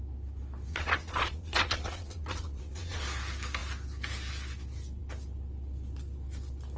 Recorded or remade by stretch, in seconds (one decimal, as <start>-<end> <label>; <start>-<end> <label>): 0.0-0.7 recorded; 0.7-3.0 remade; 3.0-6.8 recorded